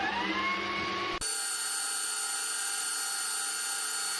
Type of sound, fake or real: real